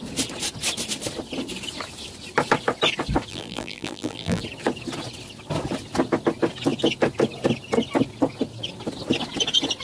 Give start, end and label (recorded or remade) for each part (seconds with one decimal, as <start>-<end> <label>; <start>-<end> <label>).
0.0-3.3 recorded; 3.3-4.4 remade; 4.4-9.8 recorded